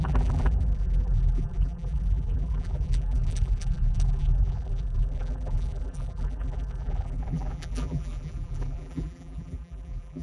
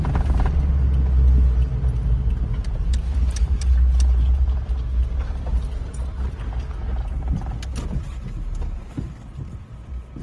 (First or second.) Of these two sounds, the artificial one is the first